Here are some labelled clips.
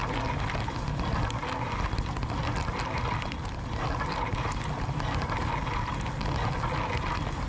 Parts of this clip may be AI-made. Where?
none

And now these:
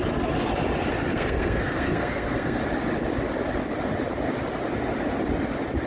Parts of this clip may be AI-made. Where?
1.1-2.6